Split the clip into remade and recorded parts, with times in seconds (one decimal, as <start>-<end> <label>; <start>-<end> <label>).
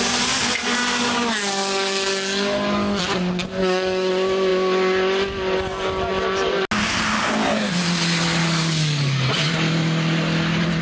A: 0.0-0.6 recorded; 0.6-3.0 remade; 3.0-3.6 recorded; 3.6-4.1 remade; 4.1-8.4 recorded; 8.4-9.3 remade; 9.3-10.8 recorded